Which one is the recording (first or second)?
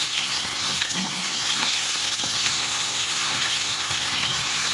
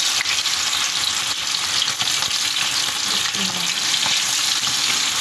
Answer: second